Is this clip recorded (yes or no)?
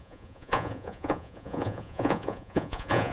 no